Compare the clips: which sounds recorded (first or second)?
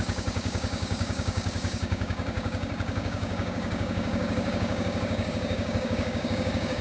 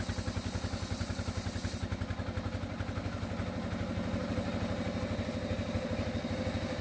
second